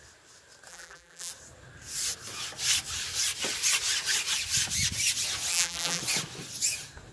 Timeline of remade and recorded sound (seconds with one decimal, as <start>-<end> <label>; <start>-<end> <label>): 0.0-0.7 recorded; 0.7-1.3 remade; 1.3-5.5 recorded; 5.5-6.0 remade; 6.0-7.1 recorded